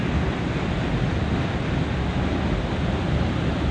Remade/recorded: recorded